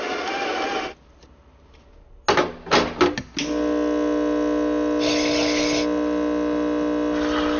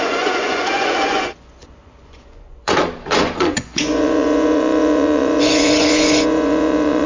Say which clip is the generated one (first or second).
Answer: second